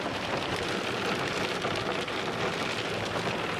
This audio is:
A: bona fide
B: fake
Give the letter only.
A